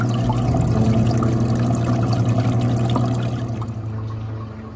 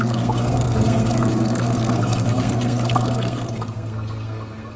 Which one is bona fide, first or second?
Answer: first